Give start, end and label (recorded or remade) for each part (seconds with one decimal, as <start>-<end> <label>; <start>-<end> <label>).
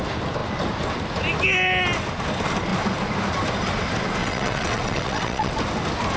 0.0-4.2 recorded; 4.2-5.5 remade; 5.5-6.2 recorded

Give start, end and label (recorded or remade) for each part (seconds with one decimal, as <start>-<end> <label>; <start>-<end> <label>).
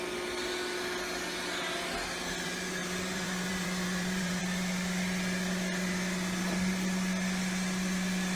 0.0-2.8 recorded; 2.8-4.4 remade; 4.4-8.4 recorded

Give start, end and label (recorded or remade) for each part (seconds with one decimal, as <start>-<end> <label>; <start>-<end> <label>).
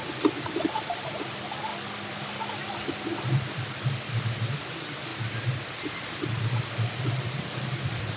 0.0-1.7 remade; 1.7-2.9 recorded; 2.9-5.1 remade; 5.1-7.1 recorded; 7.1-8.2 remade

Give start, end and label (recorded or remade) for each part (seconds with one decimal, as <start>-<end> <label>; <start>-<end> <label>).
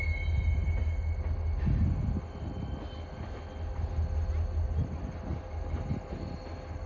0.0-6.9 recorded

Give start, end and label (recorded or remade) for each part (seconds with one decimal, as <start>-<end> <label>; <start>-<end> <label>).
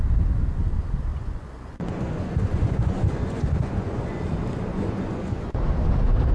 0.0-1.1 recorded; 1.1-4.2 remade; 4.2-4.7 recorded; 4.7-5.6 remade; 5.6-6.3 recorded